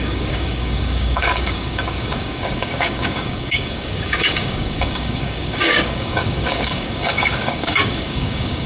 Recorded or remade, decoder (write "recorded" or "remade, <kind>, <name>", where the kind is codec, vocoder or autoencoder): remade, codec, DAC